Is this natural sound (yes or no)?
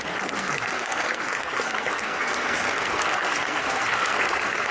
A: no